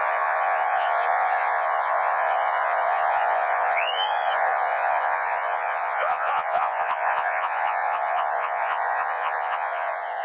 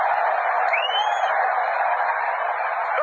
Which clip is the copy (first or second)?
first